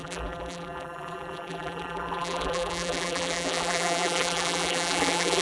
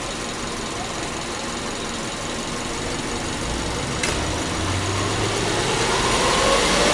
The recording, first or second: second